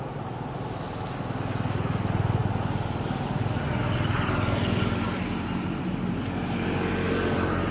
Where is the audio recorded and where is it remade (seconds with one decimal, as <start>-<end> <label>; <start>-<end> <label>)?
0.0-7.7 recorded